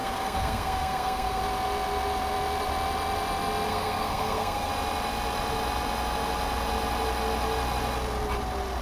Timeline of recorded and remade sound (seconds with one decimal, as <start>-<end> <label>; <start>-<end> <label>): 0.0-1.4 remade; 1.4-3.7 recorded; 3.7-4.7 remade; 4.7-8.8 recorded